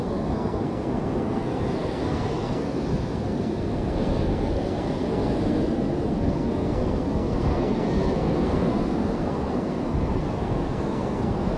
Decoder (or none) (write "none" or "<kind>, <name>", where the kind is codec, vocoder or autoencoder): codec, SNAC